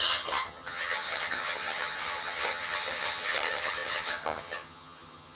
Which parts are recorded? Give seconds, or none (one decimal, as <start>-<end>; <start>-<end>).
none